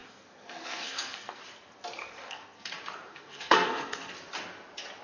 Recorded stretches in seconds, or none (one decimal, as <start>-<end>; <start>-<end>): 1.4-2.0; 2.7-3.1; 4.1-5.0